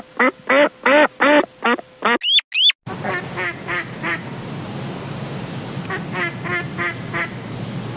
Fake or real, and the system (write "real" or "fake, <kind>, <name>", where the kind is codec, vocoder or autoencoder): real